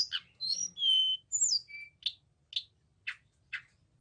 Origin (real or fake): real